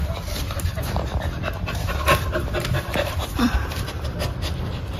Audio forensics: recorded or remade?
remade